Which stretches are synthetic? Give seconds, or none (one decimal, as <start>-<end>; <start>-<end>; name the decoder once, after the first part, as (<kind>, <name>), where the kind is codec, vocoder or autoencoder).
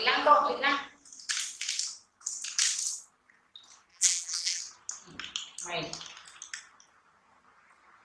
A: 3.9-4.6 (vocoder, BigVGAN v2)